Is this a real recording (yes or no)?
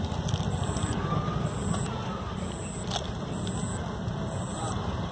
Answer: yes